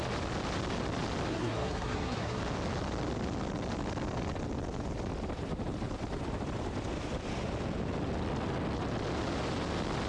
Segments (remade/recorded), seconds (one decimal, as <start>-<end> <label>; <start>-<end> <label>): 0.0-1.3 recorded; 1.3-2.4 remade; 2.4-10.1 recorded